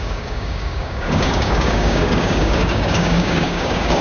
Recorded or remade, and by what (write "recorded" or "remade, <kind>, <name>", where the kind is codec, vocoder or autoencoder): remade, codec, DAC